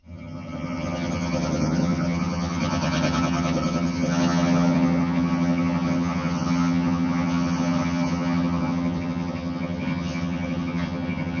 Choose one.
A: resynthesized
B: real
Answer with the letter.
A